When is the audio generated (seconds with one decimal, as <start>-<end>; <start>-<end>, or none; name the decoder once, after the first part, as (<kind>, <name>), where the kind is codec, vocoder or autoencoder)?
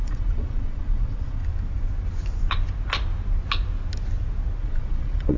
0.0-1.4 (vocoder, Vocos); 4.6-5.4